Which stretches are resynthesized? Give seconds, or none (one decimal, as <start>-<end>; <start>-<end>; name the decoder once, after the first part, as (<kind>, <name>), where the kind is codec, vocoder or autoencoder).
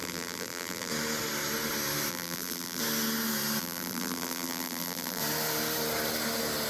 0.0-0.9 (vocoder, BigVGAN v2); 2.1-2.8; 3.6-5.2